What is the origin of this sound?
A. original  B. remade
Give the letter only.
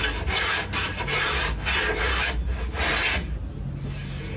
A